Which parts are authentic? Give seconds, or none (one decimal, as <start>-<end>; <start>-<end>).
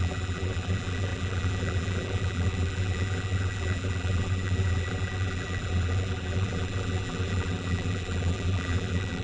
none